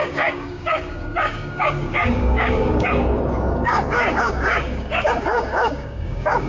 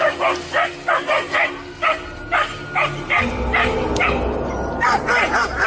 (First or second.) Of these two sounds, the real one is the second